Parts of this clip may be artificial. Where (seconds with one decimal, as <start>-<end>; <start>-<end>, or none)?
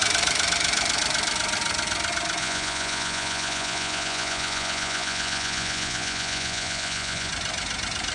2.4-7.3